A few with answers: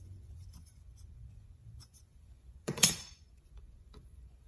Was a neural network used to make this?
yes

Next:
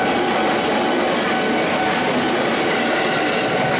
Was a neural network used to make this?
no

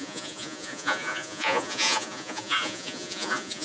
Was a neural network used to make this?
yes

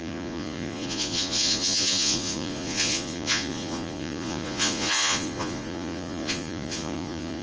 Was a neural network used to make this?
yes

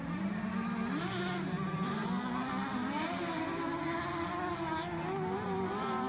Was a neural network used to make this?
no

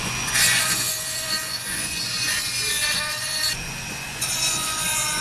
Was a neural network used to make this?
yes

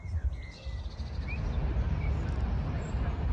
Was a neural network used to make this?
no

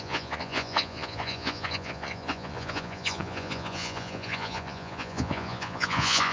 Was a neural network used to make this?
yes